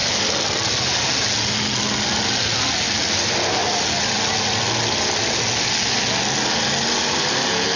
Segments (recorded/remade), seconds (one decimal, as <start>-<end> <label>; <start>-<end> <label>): 0.0-7.8 recorded